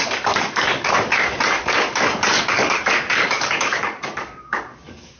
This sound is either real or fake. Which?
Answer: fake